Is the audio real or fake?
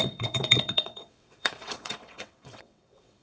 fake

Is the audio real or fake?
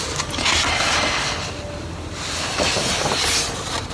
real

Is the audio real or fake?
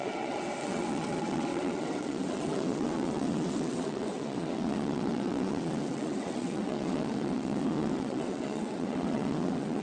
fake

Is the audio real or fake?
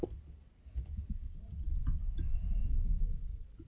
real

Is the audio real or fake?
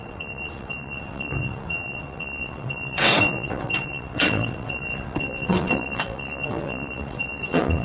fake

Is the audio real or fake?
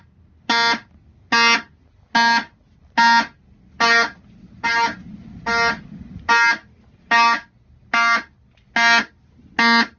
real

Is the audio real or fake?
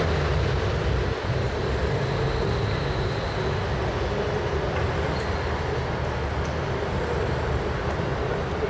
real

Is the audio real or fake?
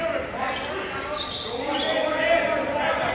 real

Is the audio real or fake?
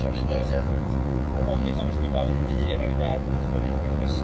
fake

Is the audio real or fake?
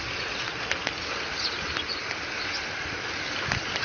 real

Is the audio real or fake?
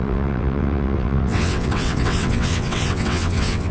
fake